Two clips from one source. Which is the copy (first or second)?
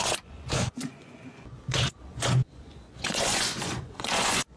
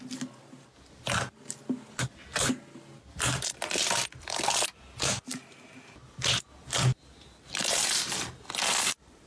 first